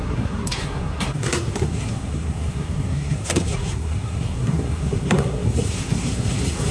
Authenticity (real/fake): fake